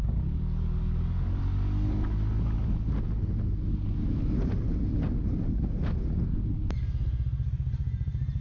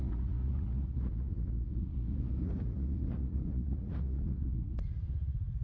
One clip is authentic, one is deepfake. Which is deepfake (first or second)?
second